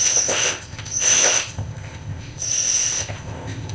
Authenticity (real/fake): fake